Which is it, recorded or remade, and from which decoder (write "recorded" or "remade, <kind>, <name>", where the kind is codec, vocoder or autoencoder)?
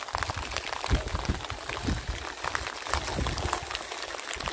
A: recorded